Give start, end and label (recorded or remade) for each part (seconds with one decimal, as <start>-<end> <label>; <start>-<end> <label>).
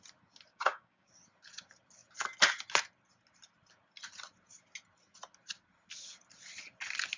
0.0-0.5 recorded; 0.5-1.1 remade; 1.1-7.2 recorded